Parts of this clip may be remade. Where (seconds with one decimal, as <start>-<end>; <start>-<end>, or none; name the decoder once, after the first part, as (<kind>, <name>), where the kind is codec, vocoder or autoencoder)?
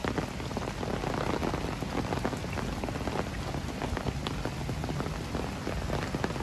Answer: none